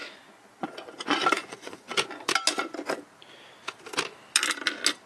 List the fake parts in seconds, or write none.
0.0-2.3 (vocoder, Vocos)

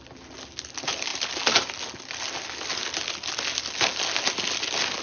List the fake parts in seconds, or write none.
none

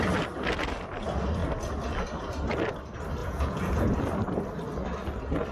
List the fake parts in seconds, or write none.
3.2-3.9 (vocoder, Vocos)

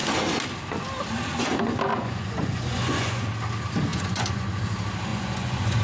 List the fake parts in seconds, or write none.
1.9-3.3 (vocoder, Vocos); 3.9-4.6; 5.1-5.8

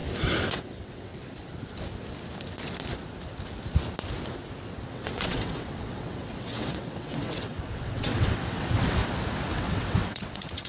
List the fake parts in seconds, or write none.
0.5-1.1 (vocoder, WaveNeXt); 4.9-9.0; 9.5-10.7

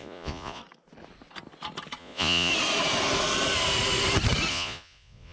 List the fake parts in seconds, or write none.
0.0-0.6 (vocoder, Vocos); 2.0-2.5; 4.5-5.3